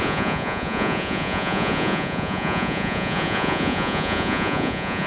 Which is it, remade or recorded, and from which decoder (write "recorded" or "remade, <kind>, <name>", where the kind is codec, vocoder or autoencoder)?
remade, vocoder, Vocos